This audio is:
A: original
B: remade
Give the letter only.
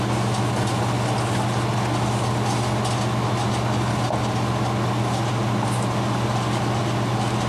A